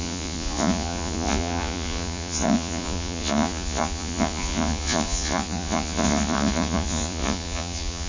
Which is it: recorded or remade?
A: remade